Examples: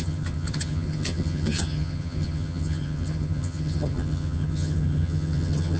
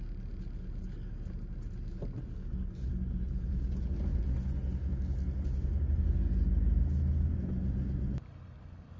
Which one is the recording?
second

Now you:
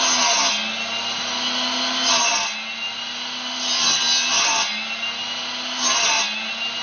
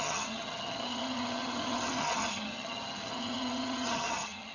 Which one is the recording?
first